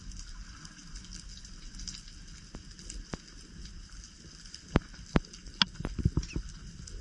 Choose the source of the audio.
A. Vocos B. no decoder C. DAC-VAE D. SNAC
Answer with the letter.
B